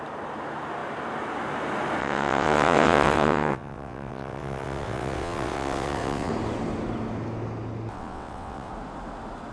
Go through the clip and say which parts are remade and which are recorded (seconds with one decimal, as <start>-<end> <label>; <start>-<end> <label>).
0.0-2.0 recorded; 2.0-6.3 remade; 6.3-7.9 recorded; 7.9-8.7 remade; 8.7-9.5 recorded